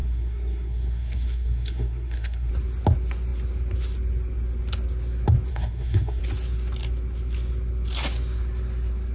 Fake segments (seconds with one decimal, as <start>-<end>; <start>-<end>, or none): 0.0-2.5; 5.5-6.2